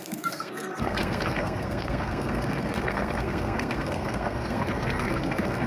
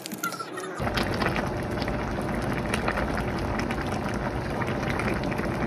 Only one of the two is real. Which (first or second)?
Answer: second